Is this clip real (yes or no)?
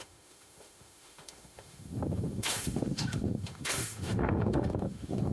no